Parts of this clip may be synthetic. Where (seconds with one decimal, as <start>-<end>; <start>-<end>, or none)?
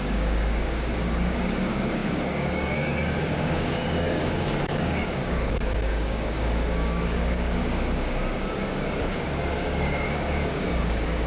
0.0-11.3